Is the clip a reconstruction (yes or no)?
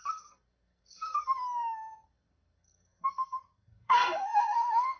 yes